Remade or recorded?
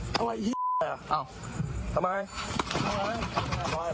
remade